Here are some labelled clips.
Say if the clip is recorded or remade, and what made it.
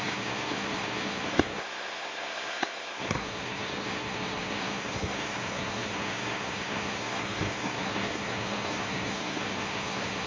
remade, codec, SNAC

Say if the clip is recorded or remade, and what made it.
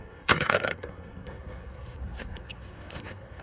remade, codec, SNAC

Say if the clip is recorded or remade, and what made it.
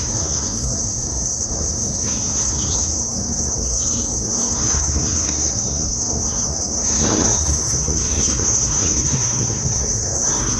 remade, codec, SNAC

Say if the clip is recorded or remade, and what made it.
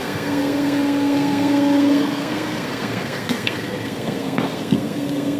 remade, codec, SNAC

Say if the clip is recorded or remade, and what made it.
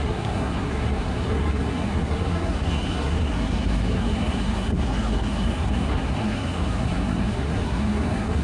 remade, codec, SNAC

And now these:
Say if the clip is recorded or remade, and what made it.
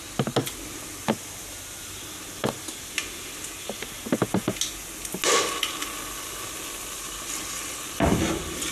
recorded